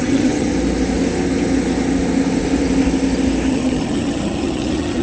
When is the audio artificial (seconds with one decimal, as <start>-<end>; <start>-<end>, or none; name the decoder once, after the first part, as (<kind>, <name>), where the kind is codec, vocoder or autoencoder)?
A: 0.0-0.5 (vocoder, HiFi-GAN); 3.5-5.0